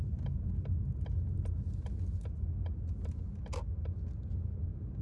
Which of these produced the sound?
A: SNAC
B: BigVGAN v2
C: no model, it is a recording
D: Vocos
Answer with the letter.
C